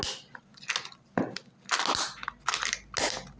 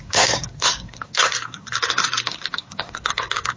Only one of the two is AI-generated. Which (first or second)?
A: second